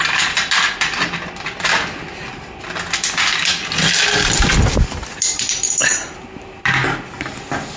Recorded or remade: recorded